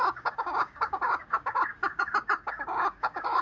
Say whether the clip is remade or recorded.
remade